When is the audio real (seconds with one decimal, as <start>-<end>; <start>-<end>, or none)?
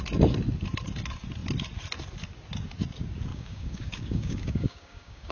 0.0-3.3